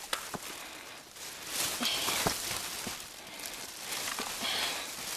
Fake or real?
real